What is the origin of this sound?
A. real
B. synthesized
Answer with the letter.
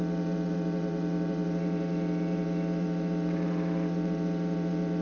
B